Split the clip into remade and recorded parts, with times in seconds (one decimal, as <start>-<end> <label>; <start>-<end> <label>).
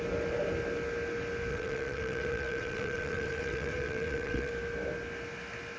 0.0-1.5 recorded; 1.5-4.5 remade; 4.5-5.8 recorded